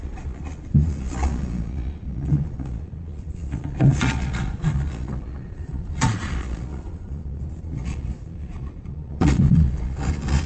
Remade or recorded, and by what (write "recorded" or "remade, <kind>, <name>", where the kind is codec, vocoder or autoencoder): remade, vocoder, Vocos